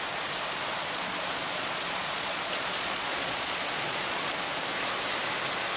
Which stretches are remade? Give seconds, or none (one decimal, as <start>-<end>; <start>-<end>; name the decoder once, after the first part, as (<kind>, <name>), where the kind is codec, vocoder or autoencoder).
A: 0.8-4.3 (vocoder, Vocos)